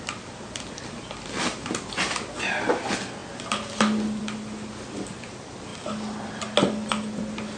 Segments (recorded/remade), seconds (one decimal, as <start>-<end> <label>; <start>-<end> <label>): 0.0-7.6 recorded